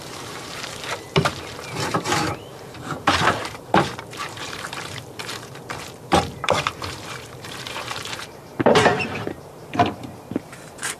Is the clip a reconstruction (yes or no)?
yes